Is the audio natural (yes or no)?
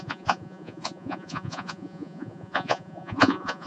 no